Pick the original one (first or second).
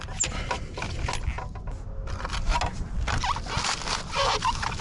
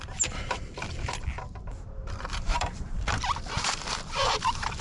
first